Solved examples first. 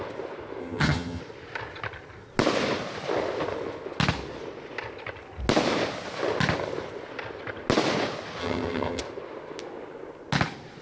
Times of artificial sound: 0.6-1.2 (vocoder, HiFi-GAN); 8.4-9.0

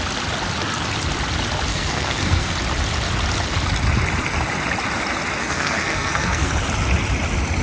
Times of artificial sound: 1.7-2.5 (codec, SNAC); 5.4-6.5

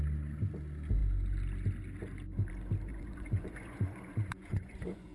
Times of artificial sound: 2.9-5.1 (vocoder, Vocos)

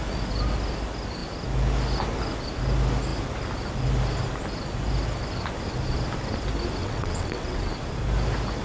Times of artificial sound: 6.8-7.7 (vocoder, WaveNeXt)

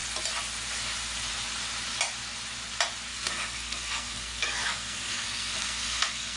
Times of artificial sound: 3.1-6.4 (codec, SNAC)

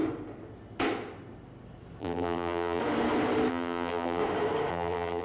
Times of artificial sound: 2.0-2.8 (vocoder, BigVGAN v2); 3.5-4.2; 4.7-5.2

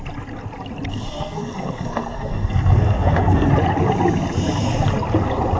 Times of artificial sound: 0.9-3.5 (codec, SNAC)